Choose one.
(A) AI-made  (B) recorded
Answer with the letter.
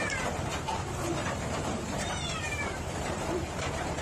A